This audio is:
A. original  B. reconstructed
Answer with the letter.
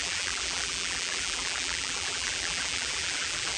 B